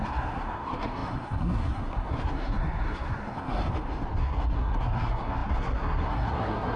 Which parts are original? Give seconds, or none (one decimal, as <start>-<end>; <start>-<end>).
3.6-4.2